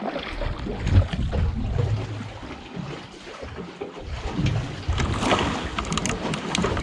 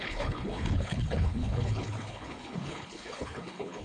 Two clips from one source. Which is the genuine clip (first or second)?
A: first